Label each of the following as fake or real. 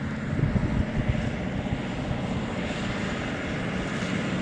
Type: real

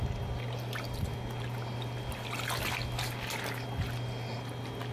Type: real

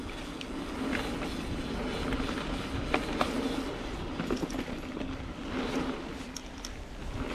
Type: real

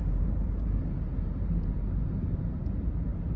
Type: fake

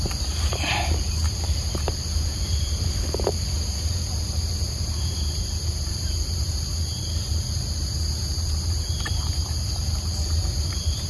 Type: fake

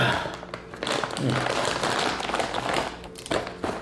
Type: real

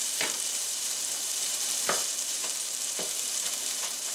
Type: fake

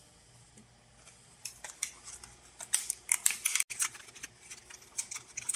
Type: real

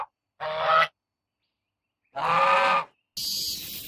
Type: real